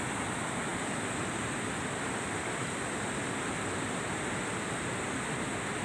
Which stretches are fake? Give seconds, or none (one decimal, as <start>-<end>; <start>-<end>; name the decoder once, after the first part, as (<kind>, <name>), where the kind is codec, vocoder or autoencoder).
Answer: none